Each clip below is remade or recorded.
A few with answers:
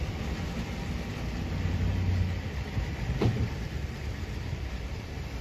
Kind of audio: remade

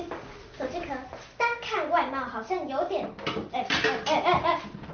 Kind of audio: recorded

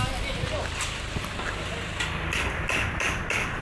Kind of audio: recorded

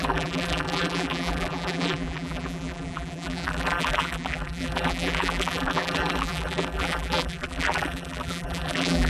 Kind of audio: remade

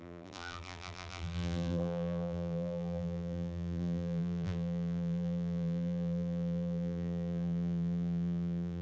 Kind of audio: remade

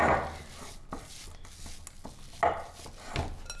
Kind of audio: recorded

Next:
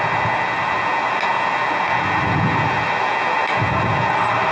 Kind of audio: recorded